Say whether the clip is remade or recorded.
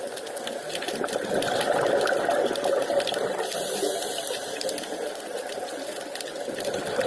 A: recorded